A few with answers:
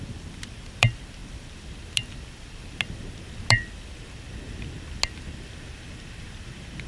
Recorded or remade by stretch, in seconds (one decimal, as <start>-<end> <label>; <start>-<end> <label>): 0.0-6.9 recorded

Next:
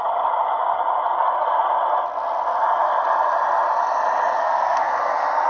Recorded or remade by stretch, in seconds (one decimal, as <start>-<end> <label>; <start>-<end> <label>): 0.0-4.4 recorded; 4.4-5.1 remade; 5.1-5.5 recorded

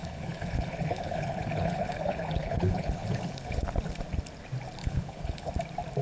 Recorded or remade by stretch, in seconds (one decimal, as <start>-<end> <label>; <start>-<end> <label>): 0.0-3.6 remade; 3.6-4.8 recorded; 4.8-5.5 remade; 5.5-6.0 recorded

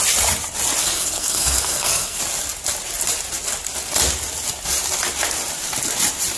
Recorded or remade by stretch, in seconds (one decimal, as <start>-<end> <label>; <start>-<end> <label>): 0.0-0.8 recorded; 0.8-2.2 remade; 2.2-6.4 recorded

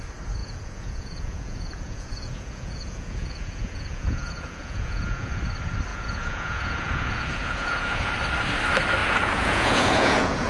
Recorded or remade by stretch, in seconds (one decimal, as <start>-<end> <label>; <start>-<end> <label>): 0.0-0.4 recorded; 0.4-5.4 remade; 5.4-5.9 recorded; 5.9-8.1 remade; 8.1-9.0 recorded; 9.0-10.5 remade

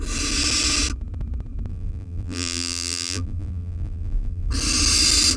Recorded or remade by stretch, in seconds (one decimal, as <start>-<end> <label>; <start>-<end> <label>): 0.0-1.7 recorded; 1.7-4.5 remade; 4.5-5.4 recorded

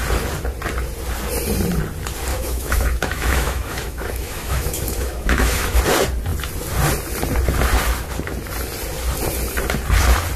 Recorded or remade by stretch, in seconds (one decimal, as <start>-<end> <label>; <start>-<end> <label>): 0.0-2.3 recorded; 2.3-5.8 remade; 5.8-10.4 recorded